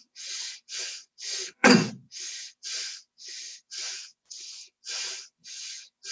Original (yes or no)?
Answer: no